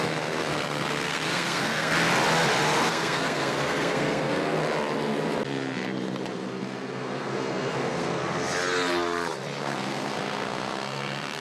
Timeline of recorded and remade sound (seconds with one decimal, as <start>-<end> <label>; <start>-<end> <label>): 0.0-1.9 remade; 1.9-2.9 recorded; 2.9-4.6 remade; 4.6-6.3 recorded; 6.3-8.2 remade; 8.2-9.6 recorded; 9.6-11.4 remade